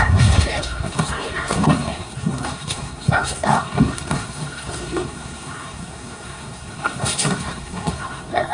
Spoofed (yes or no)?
yes